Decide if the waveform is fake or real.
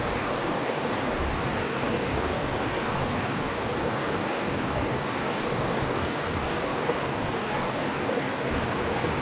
fake